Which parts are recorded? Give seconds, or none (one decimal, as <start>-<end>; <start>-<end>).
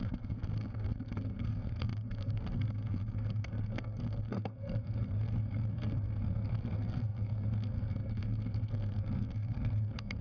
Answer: none